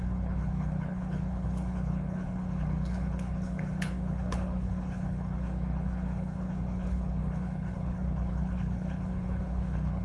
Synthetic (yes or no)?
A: yes